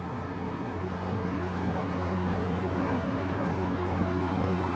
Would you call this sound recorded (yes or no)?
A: no